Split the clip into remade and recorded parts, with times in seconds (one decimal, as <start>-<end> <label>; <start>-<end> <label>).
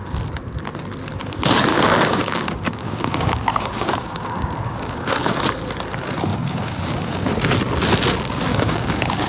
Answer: 0.0-1.7 recorded; 1.7-5.4 remade; 5.4-6.3 recorded; 6.3-7.3 remade; 7.3-8.5 recorded; 8.5-9.3 remade